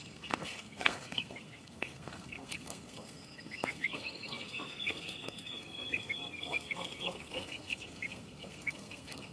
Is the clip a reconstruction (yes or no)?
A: yes